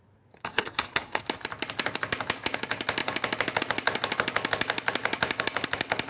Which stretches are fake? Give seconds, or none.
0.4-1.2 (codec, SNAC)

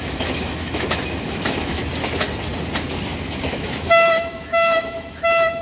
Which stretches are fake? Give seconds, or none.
0.0-1.8 (autoencoder, DAC-VAE); 3.4-5.6

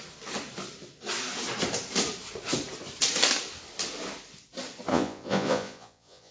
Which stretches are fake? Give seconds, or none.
4.9-6.3 (vocoder, Vocos)

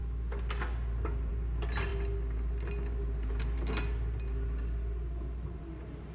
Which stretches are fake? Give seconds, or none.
none

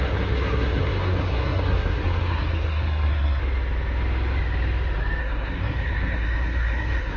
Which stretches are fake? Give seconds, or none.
0.0-3.4 (codec, SNAC); 5.2-7.2

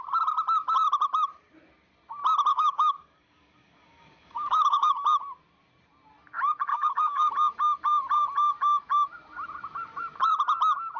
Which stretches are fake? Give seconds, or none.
2.5-4.9 (codec, DAC); 6.7-7.3

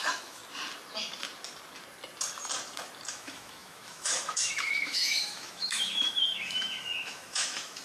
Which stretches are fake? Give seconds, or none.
0.0-0.4 (autoencoder, DAC-VAE); 3.1-7.8

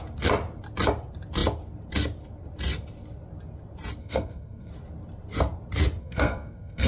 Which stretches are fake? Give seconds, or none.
4.0-4.7 (codec, SNAC); 6.0-6.9